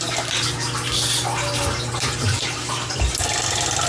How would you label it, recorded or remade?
recorded